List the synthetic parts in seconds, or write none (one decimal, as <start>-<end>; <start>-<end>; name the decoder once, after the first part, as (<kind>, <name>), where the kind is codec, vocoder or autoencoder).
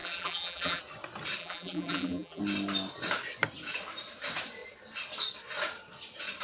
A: 0.0-0.8 (vocoder, BigVGAN v2); 1.4-2.4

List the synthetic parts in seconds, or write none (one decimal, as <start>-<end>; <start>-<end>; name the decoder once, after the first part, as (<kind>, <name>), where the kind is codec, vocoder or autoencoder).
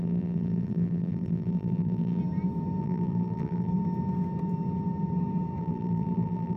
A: 0.0-2.2 (vocoder, BigVGAN v2); 2.8-3.7; 5.6-6.6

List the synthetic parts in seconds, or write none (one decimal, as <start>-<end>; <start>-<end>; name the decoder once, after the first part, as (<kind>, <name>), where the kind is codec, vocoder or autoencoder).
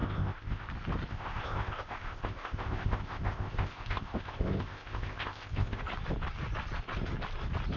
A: 0.0-0.7 (codec, ZipCodec); 1.1-5.8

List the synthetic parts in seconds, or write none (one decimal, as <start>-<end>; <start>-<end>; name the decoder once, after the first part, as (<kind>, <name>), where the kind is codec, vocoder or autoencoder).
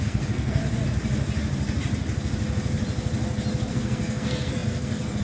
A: 0.0-0.6 (codec, SNAC); 3.7-5.2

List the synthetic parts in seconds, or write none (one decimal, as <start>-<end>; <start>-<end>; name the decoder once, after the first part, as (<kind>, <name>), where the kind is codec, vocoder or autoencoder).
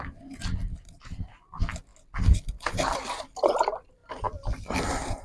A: none